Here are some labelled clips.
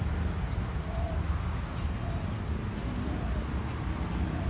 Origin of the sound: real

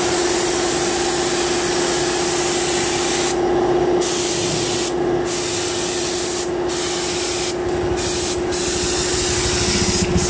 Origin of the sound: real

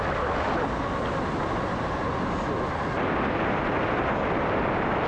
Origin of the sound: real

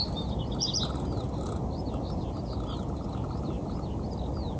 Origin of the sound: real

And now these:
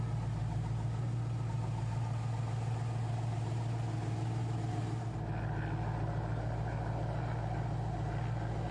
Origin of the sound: real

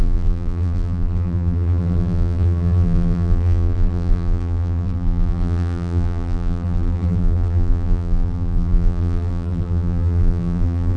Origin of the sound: fake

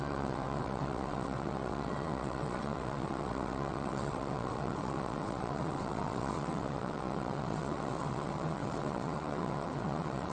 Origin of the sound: fake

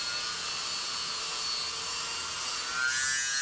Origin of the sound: real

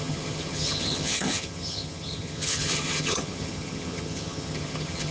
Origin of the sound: fake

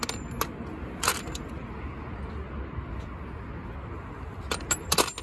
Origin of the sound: real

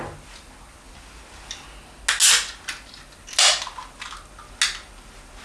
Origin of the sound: real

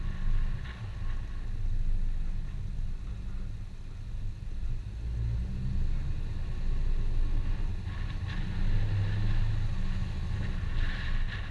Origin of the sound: real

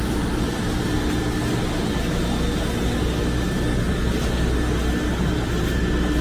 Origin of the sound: real